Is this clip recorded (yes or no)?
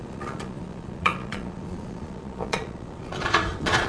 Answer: no